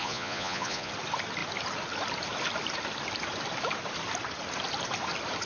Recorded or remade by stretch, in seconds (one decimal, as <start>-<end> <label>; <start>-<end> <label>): 0.0-0.9 remade; 0.9-5.5 recorded

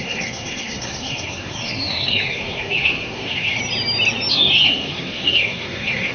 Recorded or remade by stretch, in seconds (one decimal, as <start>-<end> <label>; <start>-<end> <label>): 0.0-3.6 remade; 3.6-4.3 recorded; 4.3-6.1 remade

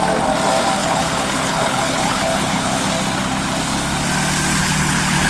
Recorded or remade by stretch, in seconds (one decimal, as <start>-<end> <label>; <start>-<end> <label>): 0.0-0.8 recorded; 0.8-2.9 remade; 2.9-4.6 recorded; 4.6-5.3 remade